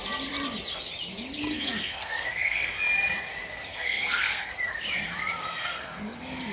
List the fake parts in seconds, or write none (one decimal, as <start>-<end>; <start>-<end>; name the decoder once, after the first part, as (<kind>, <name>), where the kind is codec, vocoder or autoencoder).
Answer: 1.4-2.7 (codec, SNAC); 3.7-4.5; 5.4-5.9